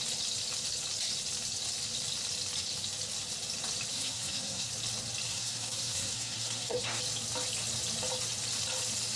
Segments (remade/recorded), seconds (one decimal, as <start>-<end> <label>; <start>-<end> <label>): 0.0-3.9 recorded; 3.9-4.7 remade; 4.7-5.3 recorded; 5.3-7.0 remade; 7.0-9.2 recorded